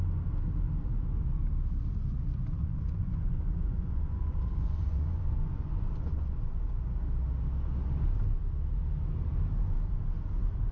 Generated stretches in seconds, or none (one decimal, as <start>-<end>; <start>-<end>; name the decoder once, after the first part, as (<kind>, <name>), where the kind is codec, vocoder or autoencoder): 2.6-6.6 (vocoder, Vocos)